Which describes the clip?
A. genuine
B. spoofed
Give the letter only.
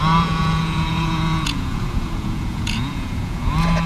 B